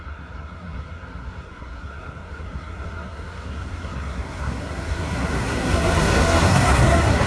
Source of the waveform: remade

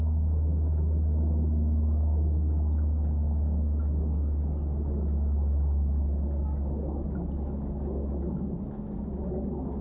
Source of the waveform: recorded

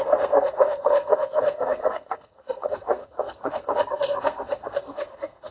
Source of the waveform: remade